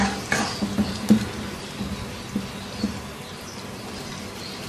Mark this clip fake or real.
real